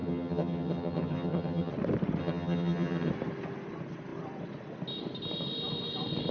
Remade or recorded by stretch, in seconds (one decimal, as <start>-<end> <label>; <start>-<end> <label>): 0.0-1.7 remade; 1.7-2.2 recorded; 2.2-3.1 remade; 3.1-6.3 recorded